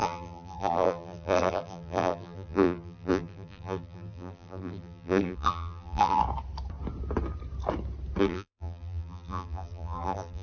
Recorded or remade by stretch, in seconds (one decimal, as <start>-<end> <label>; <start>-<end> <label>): 0.0-6.2 remade; 6.2-8.2 recorded; 8.2-10.4 remade